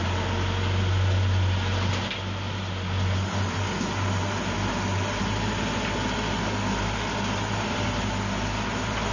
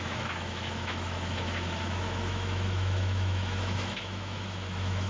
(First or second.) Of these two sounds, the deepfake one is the second